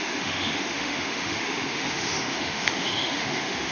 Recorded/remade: remade